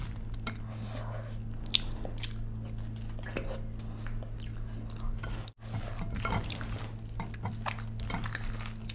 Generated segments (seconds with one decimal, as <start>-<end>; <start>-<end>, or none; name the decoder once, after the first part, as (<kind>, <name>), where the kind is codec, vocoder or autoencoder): none